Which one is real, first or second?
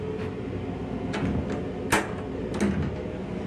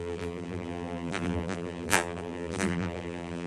first